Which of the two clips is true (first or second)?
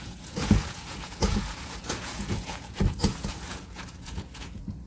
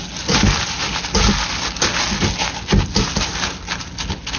second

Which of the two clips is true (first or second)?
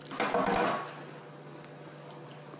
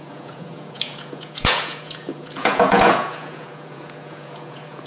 first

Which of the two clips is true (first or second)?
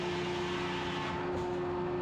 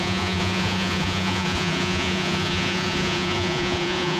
first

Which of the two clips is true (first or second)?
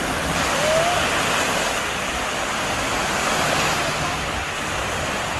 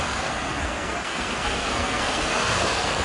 first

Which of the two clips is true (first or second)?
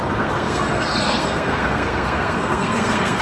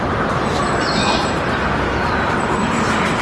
second